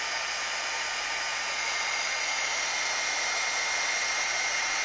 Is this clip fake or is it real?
real